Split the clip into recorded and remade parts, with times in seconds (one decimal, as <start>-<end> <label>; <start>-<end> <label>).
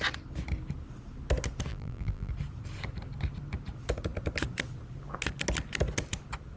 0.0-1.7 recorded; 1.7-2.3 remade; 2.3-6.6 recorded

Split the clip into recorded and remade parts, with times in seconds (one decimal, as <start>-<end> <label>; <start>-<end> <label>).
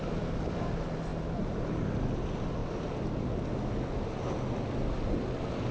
0.0-2.6 recorded; 2.6-3.3 remade; 3.3-5.7 recorded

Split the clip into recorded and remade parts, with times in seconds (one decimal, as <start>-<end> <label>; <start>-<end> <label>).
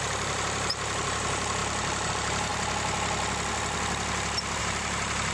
0.0-2.5 remade; 2.5-4.6 recorded; 4.6-5.3 remade